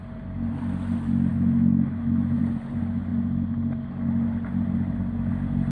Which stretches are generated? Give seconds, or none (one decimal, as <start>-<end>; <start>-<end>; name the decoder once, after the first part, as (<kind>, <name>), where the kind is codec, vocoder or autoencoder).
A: 1.3-2.4 (autoencoder, DAC-VAE)